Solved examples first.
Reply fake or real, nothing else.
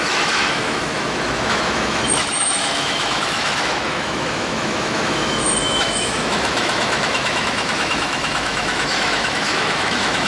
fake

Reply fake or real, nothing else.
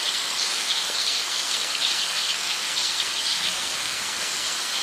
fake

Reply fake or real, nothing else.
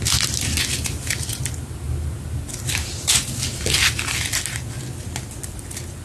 real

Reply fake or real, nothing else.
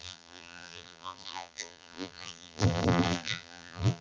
fake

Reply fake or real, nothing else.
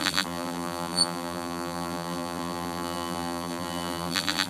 fake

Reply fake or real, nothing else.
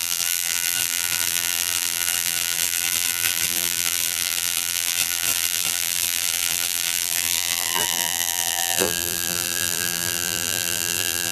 fake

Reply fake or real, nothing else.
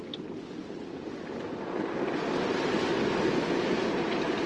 real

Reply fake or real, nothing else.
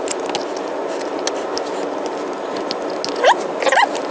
real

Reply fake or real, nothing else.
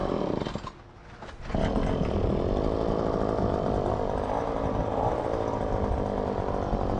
real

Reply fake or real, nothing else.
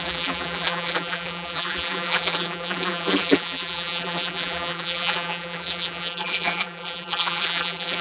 fake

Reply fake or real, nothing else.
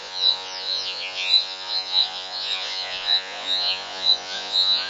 fake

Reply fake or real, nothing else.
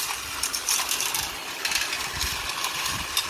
fake